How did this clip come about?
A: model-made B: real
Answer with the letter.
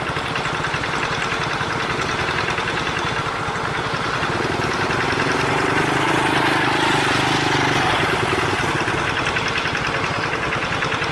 B